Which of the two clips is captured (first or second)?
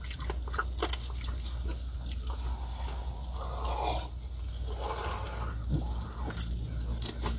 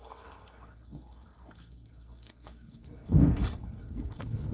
first